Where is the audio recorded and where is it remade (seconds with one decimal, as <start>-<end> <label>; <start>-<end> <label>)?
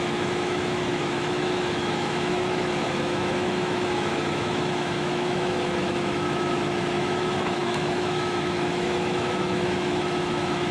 0.0-10.7 remade